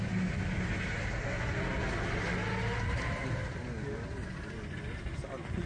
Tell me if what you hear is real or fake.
real